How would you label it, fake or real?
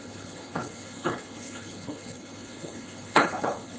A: fake